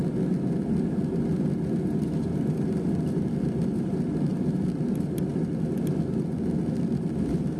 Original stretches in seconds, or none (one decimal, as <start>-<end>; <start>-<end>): 0.0-7.6